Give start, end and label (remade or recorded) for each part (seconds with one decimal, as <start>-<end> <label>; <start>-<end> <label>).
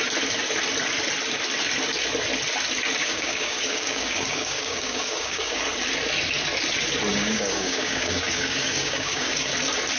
0.0-3.0 recorded; 3.0-5.6 remade; 5.6-7.1 recorded; 7.1-9.5 remade; 9.5-10.0 recorded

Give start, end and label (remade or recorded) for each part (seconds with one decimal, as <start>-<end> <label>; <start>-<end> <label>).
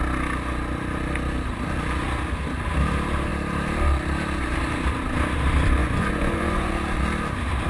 0.0-5.8 recorded; 5.8-6.7 remade; 6.7-7.7 recorded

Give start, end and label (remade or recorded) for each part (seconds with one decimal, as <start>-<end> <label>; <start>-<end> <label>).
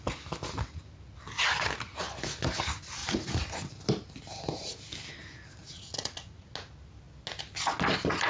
0.0-3.0 recorded; 3.0-3.7 remade; 3.7-5.6 recorded; 5.6-6.5 remade; 6.5-8.3 recorded